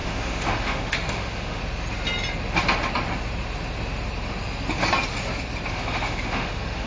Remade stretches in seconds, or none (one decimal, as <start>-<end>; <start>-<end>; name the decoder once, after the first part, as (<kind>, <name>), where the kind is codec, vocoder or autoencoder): 0.0-1.6 (autoencoder, DAC-VAE); 5.7-6.9